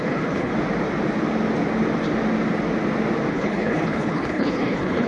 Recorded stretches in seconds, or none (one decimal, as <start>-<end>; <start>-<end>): 0.5-3.3